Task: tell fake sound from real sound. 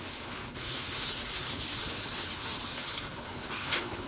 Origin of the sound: fake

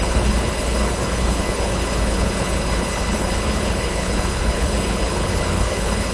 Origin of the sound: fake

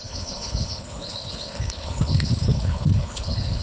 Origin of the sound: fake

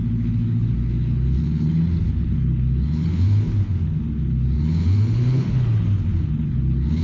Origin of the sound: fake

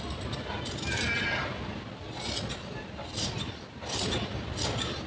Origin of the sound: real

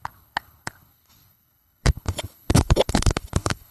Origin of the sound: fake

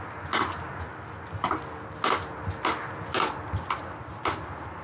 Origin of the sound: real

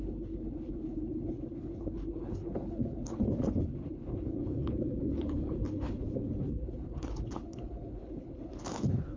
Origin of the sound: fake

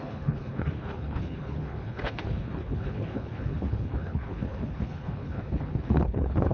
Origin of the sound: fake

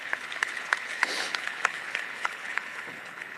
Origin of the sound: fake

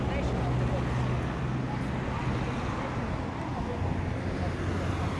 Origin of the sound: real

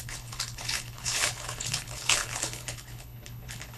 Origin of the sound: fake